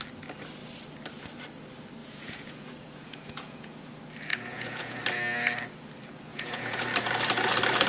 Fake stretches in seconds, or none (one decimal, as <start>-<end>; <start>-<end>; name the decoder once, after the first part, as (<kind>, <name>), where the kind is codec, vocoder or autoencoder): 2.0-3.9 (vocoder, Vocos); 4.3-5.0; 6.3-6.8